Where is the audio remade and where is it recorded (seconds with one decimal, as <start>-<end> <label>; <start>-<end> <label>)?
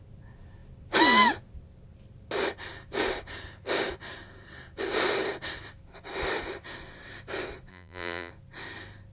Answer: 0.0-7.7 recorded; 7.7-8.3 remade; 8.3-9.1 recorded